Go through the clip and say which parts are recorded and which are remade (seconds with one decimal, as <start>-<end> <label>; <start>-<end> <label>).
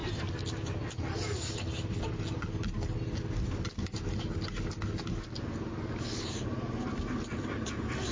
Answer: 0.0-8.1 recorded